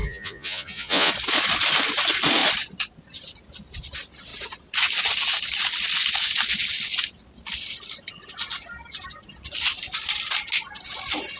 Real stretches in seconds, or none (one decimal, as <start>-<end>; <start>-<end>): 1.1-11.4